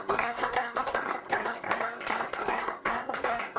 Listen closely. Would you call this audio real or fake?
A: fake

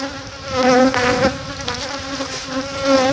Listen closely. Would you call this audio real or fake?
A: real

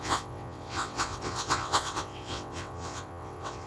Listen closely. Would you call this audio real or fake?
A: fake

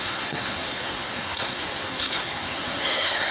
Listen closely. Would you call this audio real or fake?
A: fake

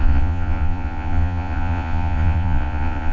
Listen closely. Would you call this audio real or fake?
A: fake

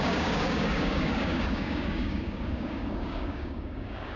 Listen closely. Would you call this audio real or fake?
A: fake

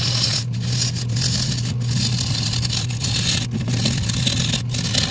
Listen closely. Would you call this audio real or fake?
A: real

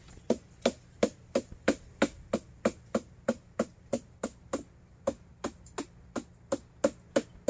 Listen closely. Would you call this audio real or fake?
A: real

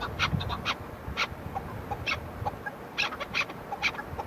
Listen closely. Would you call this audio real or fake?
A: real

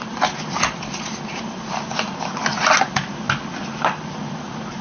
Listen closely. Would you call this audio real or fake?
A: real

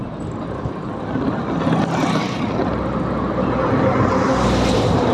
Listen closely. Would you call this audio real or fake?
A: real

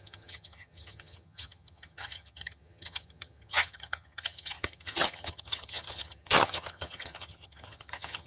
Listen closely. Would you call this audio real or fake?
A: fake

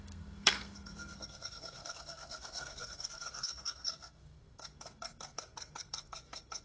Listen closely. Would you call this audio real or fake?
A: fake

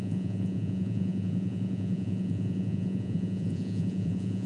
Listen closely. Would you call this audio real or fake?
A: fake